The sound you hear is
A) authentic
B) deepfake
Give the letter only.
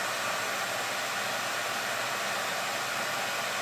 A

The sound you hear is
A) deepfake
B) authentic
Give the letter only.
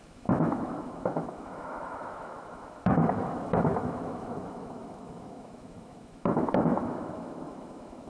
A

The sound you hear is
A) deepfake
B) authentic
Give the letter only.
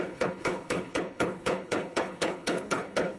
A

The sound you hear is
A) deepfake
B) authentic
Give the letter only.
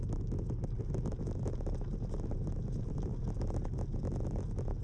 B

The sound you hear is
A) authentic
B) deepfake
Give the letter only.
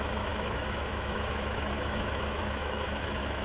B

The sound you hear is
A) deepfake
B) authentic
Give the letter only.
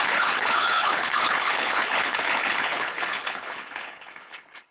A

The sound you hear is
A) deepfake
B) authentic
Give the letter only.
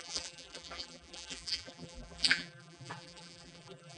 A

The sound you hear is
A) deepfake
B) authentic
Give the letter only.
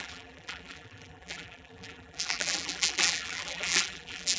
A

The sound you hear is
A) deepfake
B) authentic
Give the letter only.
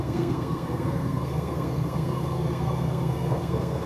A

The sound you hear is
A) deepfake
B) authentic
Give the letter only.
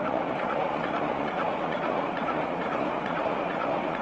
A